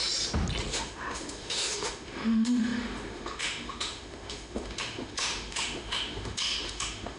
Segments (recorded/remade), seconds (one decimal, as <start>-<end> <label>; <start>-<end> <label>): 0.0-0.7 recorded; 0.7-7.2 remade